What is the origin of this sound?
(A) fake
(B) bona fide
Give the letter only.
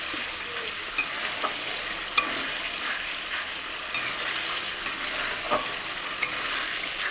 B